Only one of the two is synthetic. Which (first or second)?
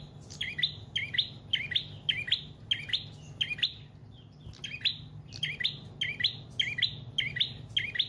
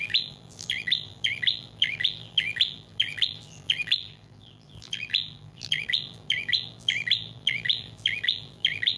second